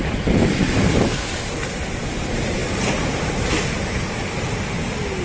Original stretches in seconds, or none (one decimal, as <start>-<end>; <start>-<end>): 0.0-0.4; 1.1-1.6; 2.2-5.2